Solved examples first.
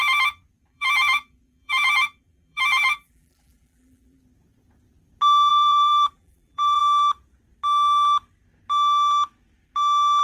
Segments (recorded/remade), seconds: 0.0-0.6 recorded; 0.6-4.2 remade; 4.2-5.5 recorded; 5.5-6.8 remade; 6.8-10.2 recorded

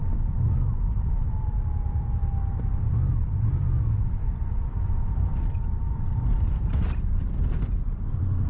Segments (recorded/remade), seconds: 0.0-8.5 remade

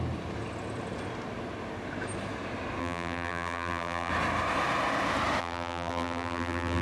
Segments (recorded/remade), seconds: 0.0-2.8 recorded; 2.8-4.1 remade; 4.1-5.4 recorded; 5.4-6.8 remade

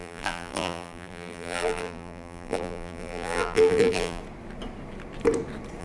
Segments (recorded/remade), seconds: 0.0-4.2 remade; 4.2-5.8 recorded